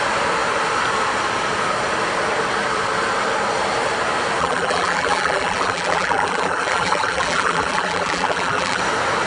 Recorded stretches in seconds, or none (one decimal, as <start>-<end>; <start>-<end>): 0.0-4.4; 8.8-9.3